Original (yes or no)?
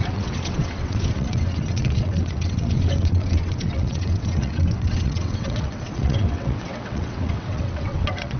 no